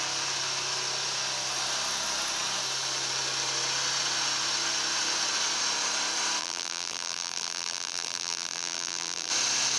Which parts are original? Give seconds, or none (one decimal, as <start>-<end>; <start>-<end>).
0.0-6.4; 9.3-9.8